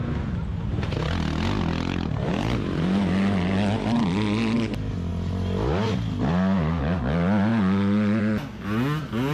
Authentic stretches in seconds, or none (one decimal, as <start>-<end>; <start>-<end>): 0.0-0.5; 1.0-9.3